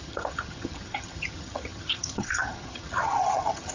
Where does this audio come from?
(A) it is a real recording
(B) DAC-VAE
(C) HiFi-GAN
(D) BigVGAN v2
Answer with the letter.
C